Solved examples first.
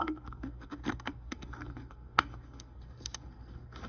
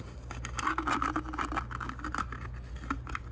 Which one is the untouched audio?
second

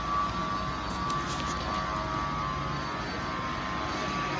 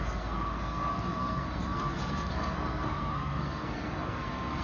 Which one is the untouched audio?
first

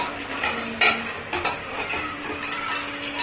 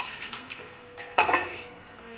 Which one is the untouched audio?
first